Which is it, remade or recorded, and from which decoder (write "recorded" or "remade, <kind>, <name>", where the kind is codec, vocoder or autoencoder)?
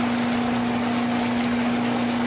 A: recorded